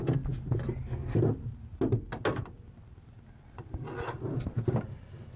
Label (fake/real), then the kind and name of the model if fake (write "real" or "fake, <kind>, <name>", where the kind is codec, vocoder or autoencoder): real